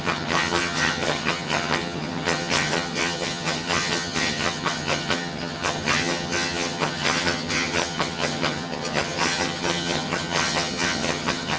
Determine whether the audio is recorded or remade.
remade